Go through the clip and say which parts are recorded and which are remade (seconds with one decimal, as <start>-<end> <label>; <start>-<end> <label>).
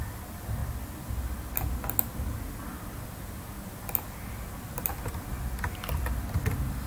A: 0.0-6.9 recorded